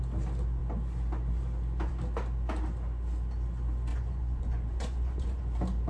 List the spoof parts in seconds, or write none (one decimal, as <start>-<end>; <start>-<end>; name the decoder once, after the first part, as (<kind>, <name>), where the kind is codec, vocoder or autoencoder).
3.9-5.4 (vocoder, Vocos)

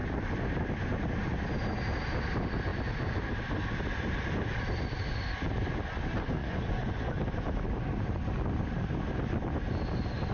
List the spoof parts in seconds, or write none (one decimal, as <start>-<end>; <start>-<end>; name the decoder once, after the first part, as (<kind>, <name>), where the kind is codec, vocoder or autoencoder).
6.4-7.1 (vocoder, Vocos)

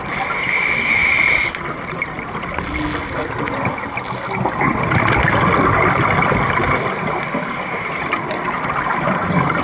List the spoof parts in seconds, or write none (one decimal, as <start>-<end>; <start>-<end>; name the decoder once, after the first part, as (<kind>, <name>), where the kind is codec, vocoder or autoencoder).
none